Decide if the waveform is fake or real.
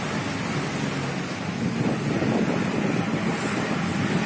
real